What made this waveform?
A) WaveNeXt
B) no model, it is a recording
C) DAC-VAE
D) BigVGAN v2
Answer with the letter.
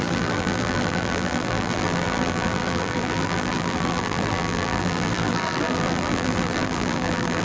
D